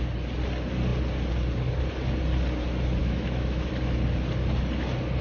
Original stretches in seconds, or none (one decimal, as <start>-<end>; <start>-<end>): 0.0-3.0; 3.7-5.2